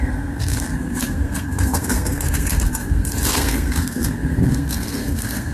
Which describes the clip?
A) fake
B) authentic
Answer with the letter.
A